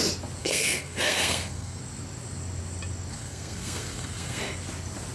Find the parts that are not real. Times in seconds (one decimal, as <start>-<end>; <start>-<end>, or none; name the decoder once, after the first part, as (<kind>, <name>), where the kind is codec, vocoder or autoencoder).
0.4-1.8 (codec, SNAC); 3.1-4.4